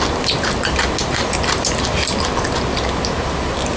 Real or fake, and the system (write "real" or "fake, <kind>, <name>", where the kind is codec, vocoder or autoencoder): real